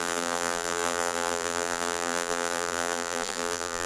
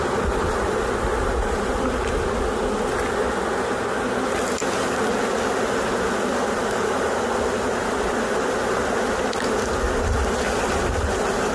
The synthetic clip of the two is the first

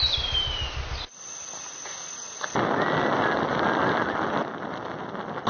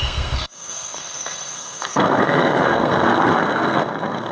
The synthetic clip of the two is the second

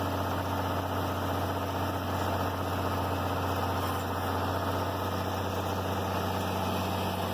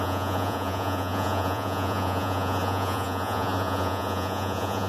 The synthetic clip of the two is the second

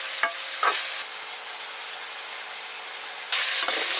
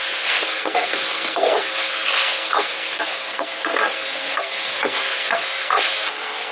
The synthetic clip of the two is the second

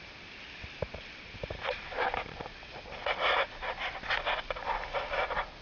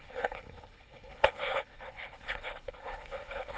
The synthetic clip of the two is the second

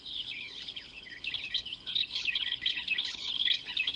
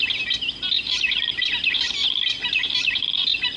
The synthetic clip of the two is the first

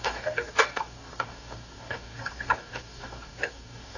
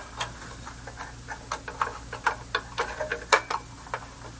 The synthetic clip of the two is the first